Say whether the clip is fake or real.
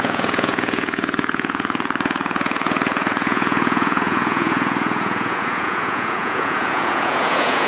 fake